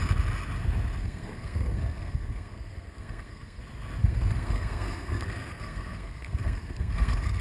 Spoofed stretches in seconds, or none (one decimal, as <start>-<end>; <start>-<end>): 1.0-3.6; 4.0-7.4